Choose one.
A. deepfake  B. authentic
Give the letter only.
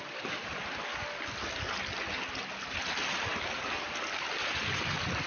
B